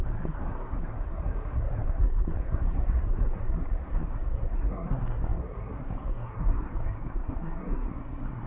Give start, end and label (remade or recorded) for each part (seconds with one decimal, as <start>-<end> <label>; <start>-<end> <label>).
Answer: 0.0-8.5 remade